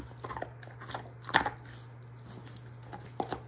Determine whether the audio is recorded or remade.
recorded